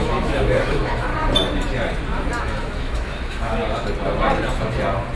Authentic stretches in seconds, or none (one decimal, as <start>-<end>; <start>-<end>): 1.1-2.4; 3.6-5.2

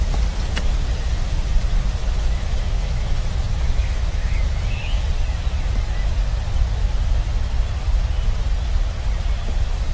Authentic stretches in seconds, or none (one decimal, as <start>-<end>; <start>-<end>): 0.0-2.0; 5.0-9.9

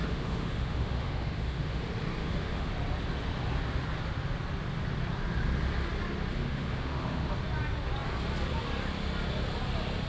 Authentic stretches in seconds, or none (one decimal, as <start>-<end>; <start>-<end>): 1.8-2.2; 2.7-6.3; 7.3-10.1

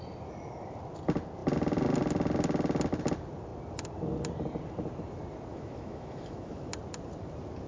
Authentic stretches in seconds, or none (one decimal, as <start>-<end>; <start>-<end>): 0.0-5.5; 6.7-7.7

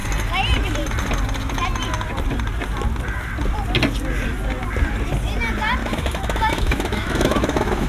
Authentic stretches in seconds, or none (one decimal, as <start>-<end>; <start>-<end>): 0.0-5.8